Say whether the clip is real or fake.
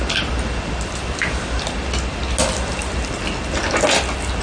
real